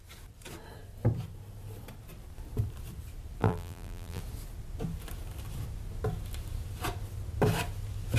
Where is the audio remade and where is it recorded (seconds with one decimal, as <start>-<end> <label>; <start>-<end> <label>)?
0.0-3.4 recorded; 3.4-4.2 remade; 4.2-8.2 recorded